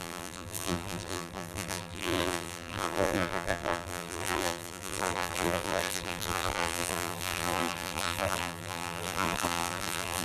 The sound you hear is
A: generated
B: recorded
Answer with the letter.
A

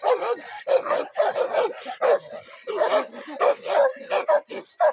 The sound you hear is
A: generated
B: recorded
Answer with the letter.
B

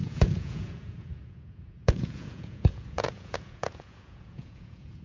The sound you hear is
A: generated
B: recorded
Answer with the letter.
A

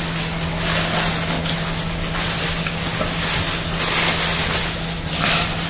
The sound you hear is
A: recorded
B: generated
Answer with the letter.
A